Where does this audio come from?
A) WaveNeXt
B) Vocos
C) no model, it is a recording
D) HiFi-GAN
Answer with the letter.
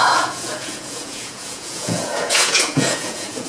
B